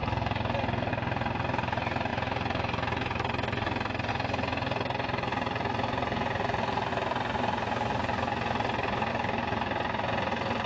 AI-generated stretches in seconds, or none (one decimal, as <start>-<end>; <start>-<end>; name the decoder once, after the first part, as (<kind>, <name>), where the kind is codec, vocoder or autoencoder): none

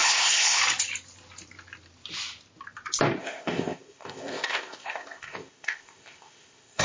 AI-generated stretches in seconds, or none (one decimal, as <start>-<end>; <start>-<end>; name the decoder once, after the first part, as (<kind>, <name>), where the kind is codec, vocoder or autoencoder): 0.0-0.6 (codec, ZipCodec); 3.2-6.8

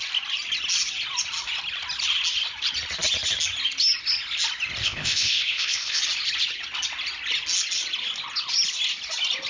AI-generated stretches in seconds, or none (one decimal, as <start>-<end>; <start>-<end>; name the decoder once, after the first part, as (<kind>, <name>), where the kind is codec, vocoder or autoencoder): 4.8-6.0 (codec, ZipCodec)

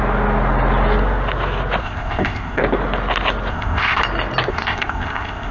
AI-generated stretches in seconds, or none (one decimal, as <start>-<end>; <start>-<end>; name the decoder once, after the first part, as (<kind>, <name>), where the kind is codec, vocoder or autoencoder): 1.8-2.6 (codec, ZipCodec); 3.5-4.0; 4.5-5.5

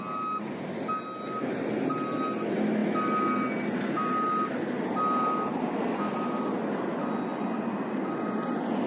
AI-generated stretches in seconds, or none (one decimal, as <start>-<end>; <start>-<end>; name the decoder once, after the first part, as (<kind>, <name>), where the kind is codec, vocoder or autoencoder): none

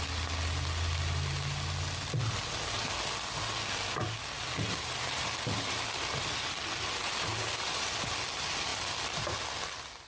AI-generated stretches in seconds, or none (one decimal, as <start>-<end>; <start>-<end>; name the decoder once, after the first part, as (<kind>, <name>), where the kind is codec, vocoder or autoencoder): none

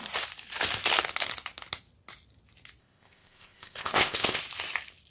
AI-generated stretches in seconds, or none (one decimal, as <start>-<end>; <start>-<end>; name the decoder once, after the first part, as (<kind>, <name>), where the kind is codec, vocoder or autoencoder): 2.8-4.4 (codec, ZipCodec)

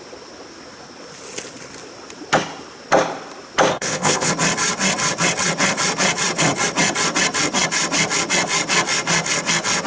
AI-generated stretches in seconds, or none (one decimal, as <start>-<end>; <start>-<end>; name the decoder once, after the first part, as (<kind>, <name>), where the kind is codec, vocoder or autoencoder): 3.7-4.3 (codec, ZipCodec)